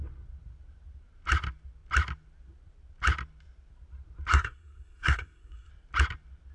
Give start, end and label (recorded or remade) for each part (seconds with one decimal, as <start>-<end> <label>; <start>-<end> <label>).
0.0-4.3 recorded; 4.3-5.7 remade; 5.7-6.5 recorded